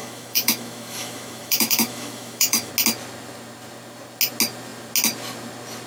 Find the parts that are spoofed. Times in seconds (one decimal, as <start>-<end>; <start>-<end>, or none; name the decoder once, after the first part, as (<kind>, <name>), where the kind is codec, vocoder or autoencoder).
0.0-2.7 (autoencoder, DAC-VAE)

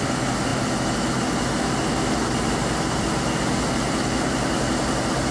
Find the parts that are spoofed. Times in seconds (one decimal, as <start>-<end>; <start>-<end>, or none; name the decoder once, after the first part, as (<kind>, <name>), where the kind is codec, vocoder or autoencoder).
none

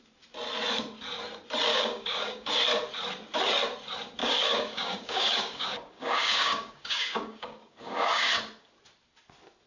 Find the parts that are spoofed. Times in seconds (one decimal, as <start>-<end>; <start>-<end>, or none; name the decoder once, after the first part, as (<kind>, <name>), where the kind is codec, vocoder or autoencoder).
1.7-2.5 (codec, DAC); 4.2-8.3

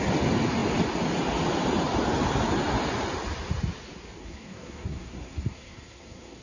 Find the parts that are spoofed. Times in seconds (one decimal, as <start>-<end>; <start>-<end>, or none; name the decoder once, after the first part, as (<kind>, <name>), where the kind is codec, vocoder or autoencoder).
4.2-6.4 (codec, SNAC)

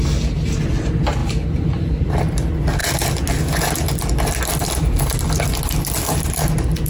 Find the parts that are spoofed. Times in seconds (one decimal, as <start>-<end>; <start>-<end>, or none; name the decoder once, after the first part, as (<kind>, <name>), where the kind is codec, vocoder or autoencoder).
none

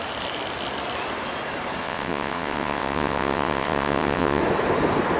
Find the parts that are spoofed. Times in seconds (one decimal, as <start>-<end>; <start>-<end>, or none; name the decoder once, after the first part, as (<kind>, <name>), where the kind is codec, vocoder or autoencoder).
1.8-4.4 (vocoder, WaveNeXt)

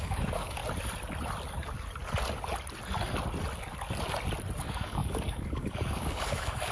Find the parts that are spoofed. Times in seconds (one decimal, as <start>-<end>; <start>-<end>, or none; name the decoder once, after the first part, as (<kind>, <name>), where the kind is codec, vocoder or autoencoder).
0.0-0.6 (codec, DAC); 4.6-6.7

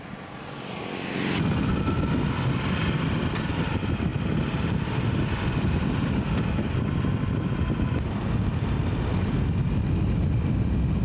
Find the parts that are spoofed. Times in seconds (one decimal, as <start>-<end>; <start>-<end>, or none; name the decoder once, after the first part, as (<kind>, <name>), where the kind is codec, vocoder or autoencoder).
none